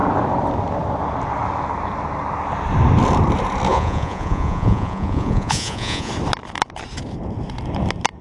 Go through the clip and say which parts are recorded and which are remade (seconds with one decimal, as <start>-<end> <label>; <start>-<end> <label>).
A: 0.0-3.7 recorded; 3.7-6.1 remade; 6.1-8.2 recorded